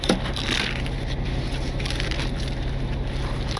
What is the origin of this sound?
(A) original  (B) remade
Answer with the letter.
A